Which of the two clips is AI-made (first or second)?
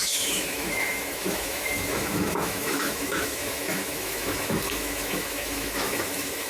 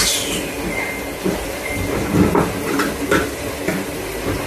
first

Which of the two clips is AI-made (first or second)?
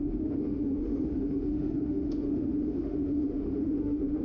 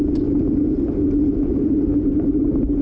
first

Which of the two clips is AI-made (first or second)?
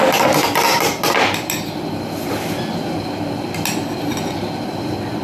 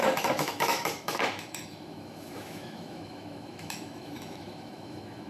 second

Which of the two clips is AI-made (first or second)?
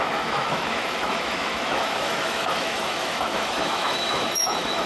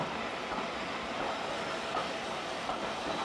first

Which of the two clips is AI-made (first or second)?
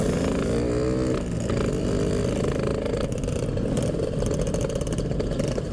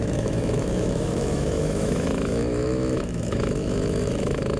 second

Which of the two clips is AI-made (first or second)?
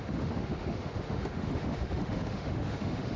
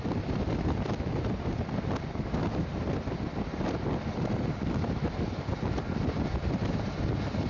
first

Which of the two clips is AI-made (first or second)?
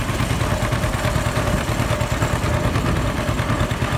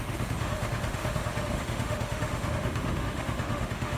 second